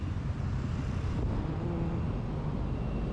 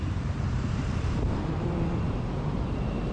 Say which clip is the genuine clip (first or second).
first